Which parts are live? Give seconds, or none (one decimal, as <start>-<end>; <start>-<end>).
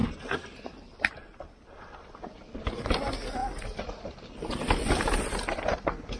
0.0-6.2